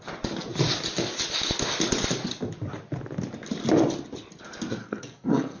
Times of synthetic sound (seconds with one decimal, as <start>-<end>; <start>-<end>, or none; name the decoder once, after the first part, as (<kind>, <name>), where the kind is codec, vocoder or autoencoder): 4.8-5.6 (codec, SNAC)